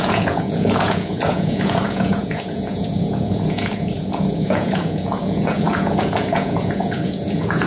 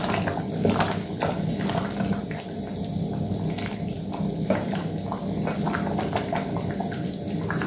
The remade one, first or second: first